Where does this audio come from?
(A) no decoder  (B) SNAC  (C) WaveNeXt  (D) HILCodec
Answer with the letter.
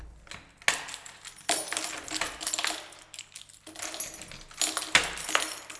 A